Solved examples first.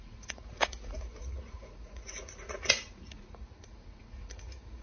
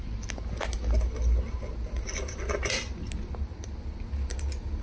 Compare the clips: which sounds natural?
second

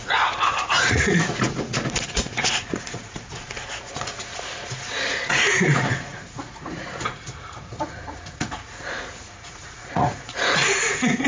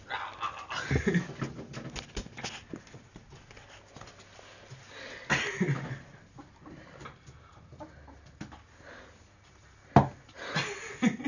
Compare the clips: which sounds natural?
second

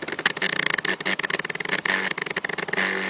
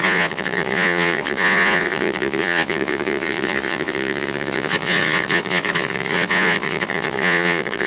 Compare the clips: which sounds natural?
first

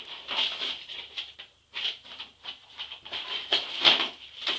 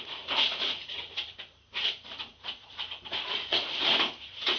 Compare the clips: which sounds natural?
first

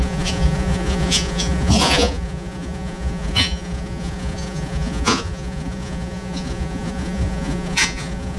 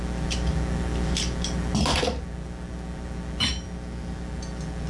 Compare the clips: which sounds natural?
second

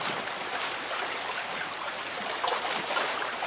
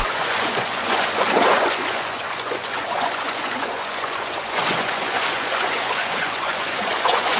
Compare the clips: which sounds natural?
first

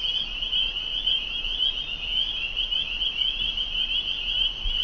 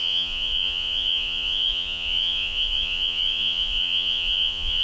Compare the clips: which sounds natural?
first